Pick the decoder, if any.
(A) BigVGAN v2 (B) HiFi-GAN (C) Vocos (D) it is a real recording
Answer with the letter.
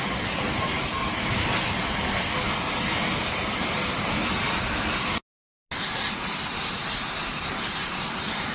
D